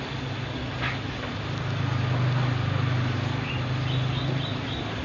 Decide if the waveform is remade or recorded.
recorded